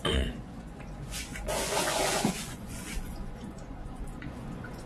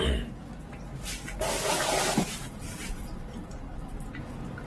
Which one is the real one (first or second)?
second